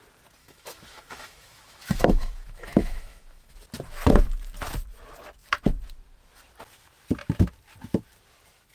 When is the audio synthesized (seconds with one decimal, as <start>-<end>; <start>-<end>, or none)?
0.4-3.5